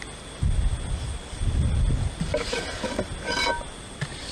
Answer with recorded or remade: recorded